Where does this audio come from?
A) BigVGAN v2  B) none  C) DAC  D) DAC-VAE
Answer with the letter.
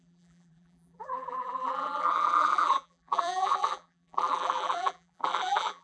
A